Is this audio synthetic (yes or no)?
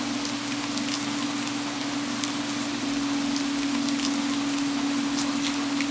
no